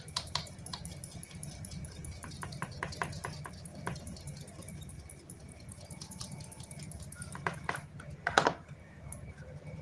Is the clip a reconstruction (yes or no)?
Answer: yes